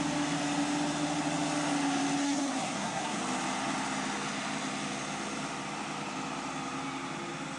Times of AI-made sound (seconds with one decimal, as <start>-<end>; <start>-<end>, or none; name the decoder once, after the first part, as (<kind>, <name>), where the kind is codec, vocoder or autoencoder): 2.2-3.2 (codec, SNAC)